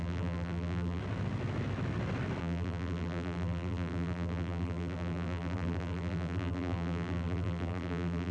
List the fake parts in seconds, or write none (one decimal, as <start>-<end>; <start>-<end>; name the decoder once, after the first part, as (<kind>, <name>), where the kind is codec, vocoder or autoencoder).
0.0-1.0 (vocoder, BigVGAN v2); 2.4-8.3